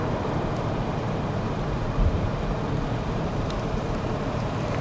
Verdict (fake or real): fake